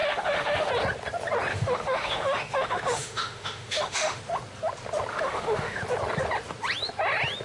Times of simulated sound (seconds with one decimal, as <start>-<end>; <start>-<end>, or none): 0.0-0.7; 1.5-4.2; 5.1-5.8